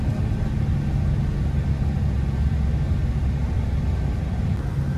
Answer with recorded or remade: recorded